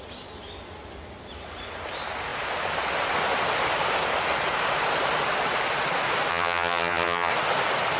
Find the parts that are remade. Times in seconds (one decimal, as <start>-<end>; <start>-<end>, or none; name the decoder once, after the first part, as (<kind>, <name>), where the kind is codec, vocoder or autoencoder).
6.3-7.3 (vocoder, HiFi-GAN)